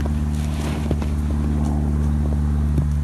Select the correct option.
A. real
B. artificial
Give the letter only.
A